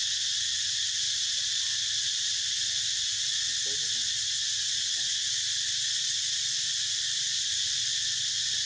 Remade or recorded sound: recorded